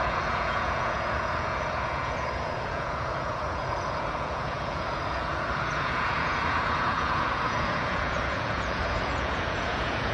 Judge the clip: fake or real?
fake